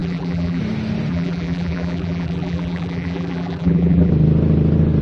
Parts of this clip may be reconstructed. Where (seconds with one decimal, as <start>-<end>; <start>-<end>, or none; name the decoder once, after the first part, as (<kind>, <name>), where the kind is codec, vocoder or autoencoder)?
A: 0.0-0.6 (vocoder, BigVGAN v2); 1.1-4.1